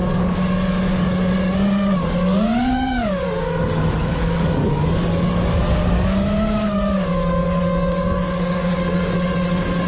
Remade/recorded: remade